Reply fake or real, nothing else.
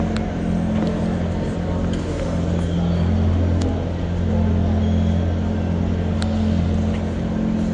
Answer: real